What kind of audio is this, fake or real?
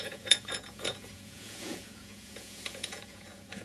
fake